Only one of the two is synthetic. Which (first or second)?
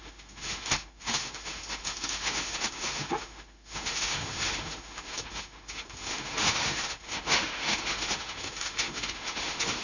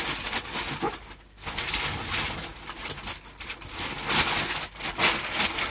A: first